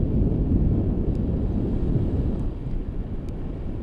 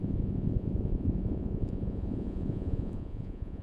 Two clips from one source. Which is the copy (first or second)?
second